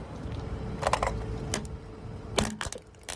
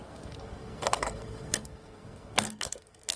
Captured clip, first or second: first